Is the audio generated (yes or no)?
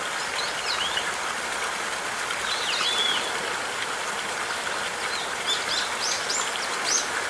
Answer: no